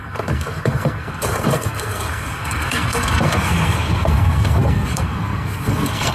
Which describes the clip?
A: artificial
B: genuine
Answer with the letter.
A